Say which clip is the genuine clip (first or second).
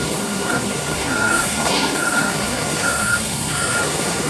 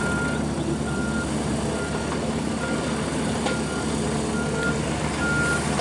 second